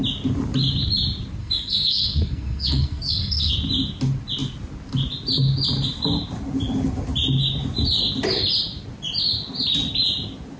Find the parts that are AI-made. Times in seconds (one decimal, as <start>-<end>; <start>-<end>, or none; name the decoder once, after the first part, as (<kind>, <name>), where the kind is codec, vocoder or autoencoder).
1.4-3.5 (codec, SNAC)